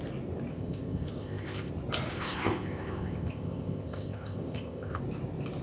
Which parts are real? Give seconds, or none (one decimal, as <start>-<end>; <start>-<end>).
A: 0.0-0.5; 1.7-2.1; 5.0-5.6